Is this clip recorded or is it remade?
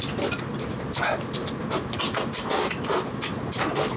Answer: recorded